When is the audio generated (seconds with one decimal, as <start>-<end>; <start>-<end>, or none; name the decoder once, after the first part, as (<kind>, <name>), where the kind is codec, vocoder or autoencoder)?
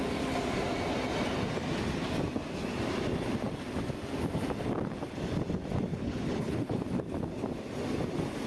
5.9-6.8 (codec, HILCodec)